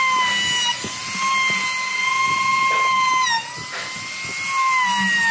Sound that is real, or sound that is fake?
real